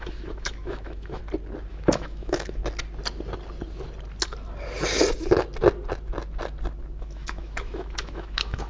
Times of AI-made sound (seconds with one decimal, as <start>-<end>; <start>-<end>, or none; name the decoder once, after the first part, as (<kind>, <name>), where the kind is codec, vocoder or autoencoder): 0.0-1.2 (autoencoder, DAC-VAE); 1.7-2.6; 7.0-8.7